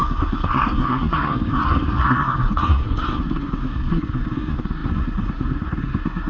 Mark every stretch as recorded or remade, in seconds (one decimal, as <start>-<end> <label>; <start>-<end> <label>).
0.0-6.3 remade